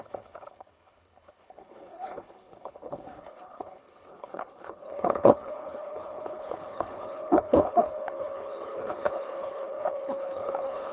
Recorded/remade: remade